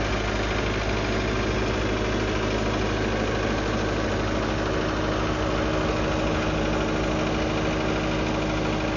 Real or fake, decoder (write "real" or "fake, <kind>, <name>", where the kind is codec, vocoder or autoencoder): real